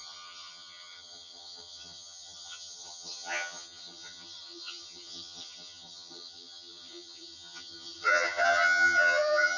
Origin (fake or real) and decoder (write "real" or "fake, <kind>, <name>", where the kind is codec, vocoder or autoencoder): fake, vocoder, HiFi-GAN